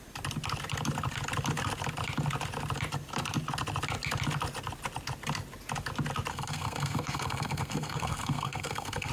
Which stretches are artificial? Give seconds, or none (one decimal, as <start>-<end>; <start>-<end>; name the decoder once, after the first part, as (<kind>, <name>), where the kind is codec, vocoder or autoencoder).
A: 6.3-9.1 (codec, SNAC)